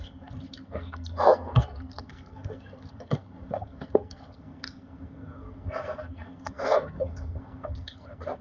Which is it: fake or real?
fake